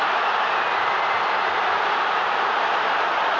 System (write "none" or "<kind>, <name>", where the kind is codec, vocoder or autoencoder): none